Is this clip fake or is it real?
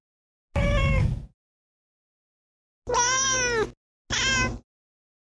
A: real